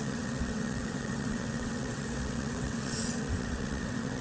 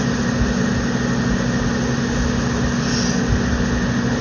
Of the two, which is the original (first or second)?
second